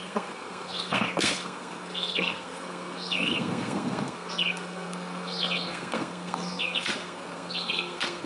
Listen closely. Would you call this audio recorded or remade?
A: remade